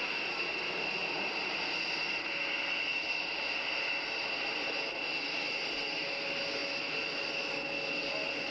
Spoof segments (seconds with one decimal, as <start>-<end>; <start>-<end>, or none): none